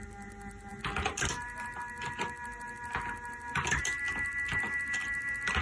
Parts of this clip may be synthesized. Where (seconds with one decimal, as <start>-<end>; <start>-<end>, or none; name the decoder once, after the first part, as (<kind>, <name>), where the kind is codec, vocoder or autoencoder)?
none